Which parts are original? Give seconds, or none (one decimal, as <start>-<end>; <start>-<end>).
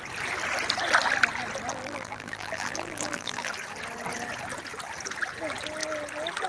0.0-1.7; 3.5-6.5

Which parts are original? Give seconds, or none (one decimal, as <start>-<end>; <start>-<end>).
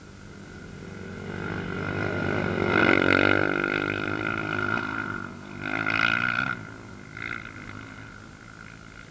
0.0-9.1